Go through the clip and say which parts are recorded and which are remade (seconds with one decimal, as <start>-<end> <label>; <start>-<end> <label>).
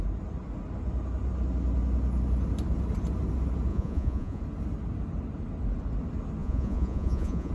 0.0-3.7 recorded; 3.7-4.4 remade; 4.4-6.4 recorded; 6.4-7.5 remade